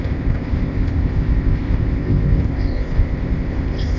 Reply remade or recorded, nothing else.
remade